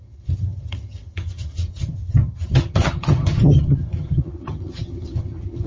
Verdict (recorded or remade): remade